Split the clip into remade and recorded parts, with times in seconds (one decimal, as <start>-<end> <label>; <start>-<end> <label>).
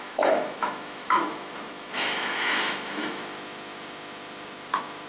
0.0-3.2 remade; 3.2-5.1 recorded